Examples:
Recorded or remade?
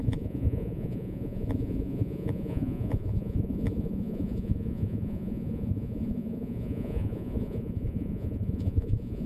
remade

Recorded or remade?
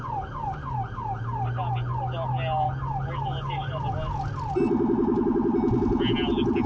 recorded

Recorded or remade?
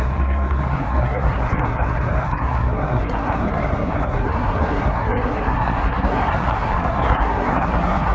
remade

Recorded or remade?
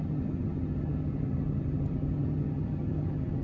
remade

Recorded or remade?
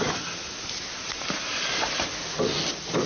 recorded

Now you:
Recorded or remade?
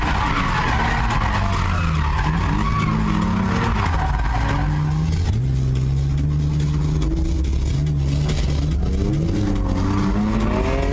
recorded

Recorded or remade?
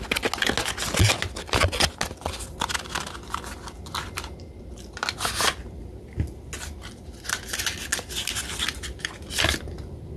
recorded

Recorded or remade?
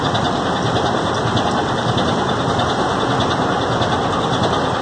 recorded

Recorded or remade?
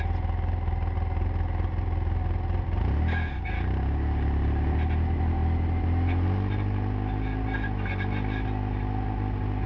recorded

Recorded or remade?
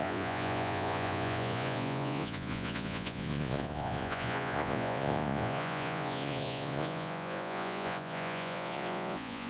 remade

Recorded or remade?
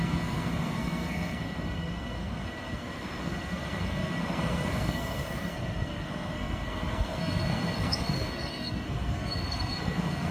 remade